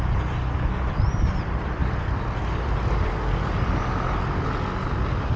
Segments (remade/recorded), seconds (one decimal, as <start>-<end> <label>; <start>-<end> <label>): 0.0-5.4 recorded